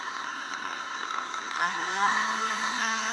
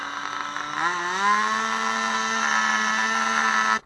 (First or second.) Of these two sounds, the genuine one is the second